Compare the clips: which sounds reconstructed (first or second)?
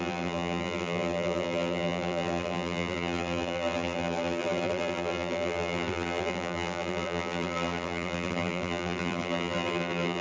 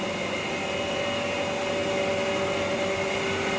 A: first